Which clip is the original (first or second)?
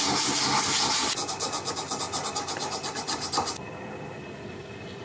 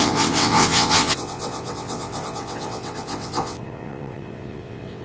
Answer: first